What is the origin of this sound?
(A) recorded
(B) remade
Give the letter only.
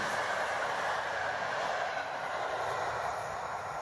A